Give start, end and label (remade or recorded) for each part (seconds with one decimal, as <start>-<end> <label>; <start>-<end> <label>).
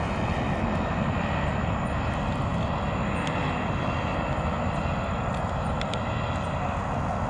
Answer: 0.0-7.3 recorded